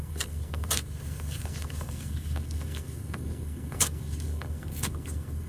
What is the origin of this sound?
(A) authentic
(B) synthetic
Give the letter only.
B